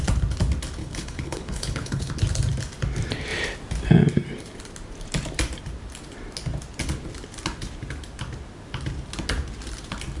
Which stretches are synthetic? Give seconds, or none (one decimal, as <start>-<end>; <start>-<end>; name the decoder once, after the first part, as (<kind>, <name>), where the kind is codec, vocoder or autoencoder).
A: 0.8-2.1 (codec, HILCodec)